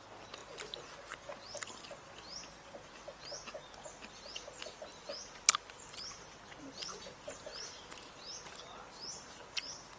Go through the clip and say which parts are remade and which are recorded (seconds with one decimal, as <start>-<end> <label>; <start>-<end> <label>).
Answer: 0.0-10.0 recorded